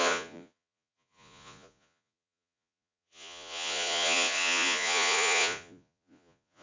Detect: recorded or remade remade